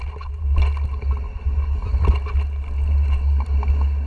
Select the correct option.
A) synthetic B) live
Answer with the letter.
B